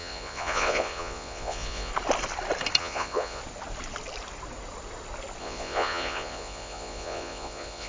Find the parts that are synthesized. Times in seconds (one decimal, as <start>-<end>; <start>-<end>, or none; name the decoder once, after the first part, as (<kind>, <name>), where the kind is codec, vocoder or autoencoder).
0.0-1.9 (vocoder, Vocos); 2.8-3.4; 5.4-7.9